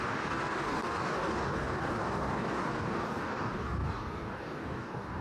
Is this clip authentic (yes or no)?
no